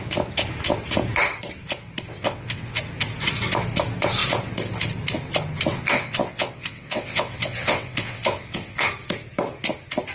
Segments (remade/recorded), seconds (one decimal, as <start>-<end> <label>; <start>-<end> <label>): 0.0-2.1 recorded; 2.1-2.8 remade; 2.8-5.7 recorded; 5.7-8.9 remade; 8.9-10.1 recorded